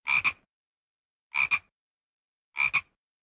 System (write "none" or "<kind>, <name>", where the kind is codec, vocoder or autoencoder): none